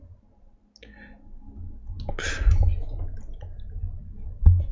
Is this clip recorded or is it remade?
recorded